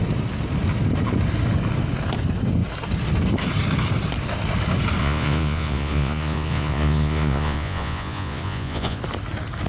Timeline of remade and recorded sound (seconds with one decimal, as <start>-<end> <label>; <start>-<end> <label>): 0.0-5.0 recorded; 5.0-9.0 remade; 9.0-9.7 recorded